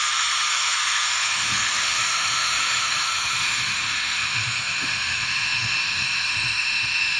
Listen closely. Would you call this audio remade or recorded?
remade